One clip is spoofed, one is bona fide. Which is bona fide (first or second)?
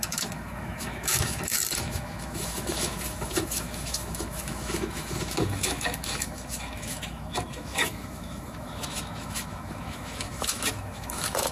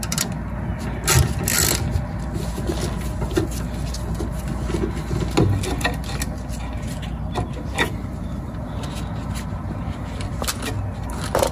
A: second